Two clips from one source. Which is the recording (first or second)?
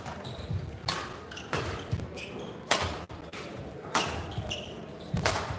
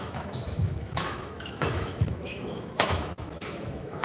first